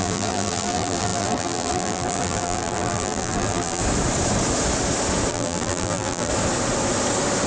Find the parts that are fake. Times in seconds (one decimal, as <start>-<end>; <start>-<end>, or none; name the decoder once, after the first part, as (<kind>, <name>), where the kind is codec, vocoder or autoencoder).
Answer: 0.0-3.8 (vocoder, BigVGAN v2); 5.3-6.3